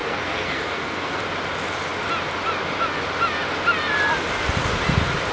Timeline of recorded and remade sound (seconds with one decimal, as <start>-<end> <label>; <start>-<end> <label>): 0.0-1.2 remade; 1.2-5.3 recorded

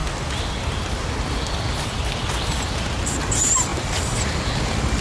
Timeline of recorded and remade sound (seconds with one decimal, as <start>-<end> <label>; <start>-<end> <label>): 0.0-3.0 recorded; 3.0-5.0 remade

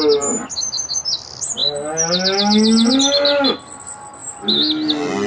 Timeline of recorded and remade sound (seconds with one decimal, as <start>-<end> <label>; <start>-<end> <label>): 0.0-5.3 recorded

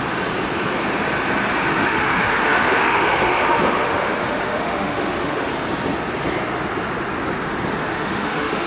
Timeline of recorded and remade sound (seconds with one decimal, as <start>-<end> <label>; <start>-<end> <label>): 0.0-1.7 recorded; 1.7-5.5 remade; 5.5-7.9 recorded; 7.9-8.7 remade

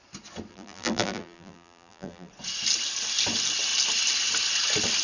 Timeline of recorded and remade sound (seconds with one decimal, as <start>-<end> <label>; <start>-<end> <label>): 0.0-0.5 recorded; 0.5-2.3 remade; 2.3-5.0 recorded